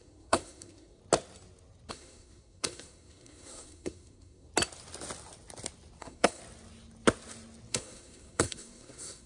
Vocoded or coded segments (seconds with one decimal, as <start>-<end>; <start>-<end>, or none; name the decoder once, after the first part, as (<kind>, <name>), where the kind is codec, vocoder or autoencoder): 0.0-1.0 (codec, SNAC); 1.9-4.5; 6.0-6.4; 7.7-9.3